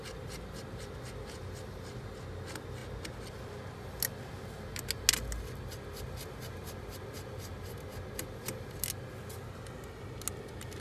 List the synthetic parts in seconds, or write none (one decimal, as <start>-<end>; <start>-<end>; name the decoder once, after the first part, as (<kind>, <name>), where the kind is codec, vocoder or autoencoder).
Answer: none